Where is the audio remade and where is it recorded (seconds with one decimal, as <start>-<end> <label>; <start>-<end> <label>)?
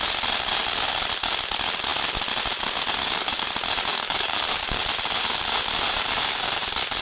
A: 0.0-3.0 recorded; 3.0-3.5 remade; 3.5-3.9 recorded; 3.9-4.8 remade; 4.8-7.0 recorded